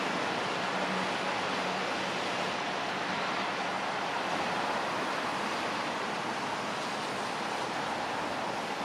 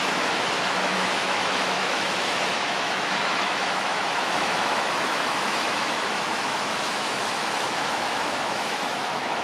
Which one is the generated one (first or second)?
second